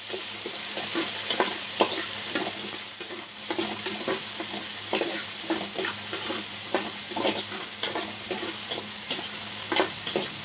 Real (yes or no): yes